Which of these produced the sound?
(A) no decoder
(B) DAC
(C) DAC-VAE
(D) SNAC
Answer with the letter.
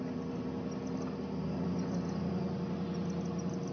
A